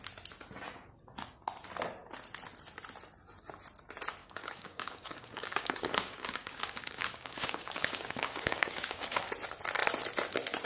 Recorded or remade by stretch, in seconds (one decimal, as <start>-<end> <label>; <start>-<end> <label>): 0.0-4.2 recorded; 4.2-9.3 remade; 9.3-10.7 recorded